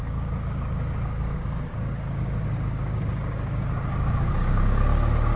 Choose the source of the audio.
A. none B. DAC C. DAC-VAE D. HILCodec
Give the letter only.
B